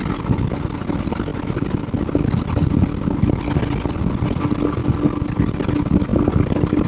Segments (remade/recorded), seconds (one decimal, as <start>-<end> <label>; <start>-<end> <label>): 0.0-6.9 recorded